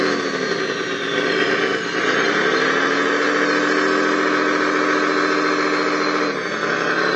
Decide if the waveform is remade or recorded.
recorded